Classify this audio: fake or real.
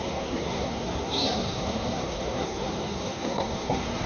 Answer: fake